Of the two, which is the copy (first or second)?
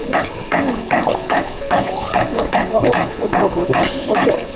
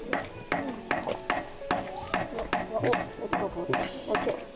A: first